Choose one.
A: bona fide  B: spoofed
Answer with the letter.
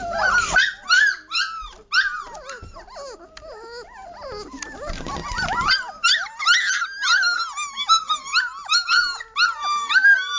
A